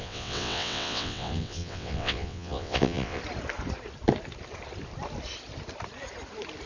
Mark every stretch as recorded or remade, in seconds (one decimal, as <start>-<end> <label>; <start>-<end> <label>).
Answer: 0.0-3.2 remade; 3.2-6.7 recorded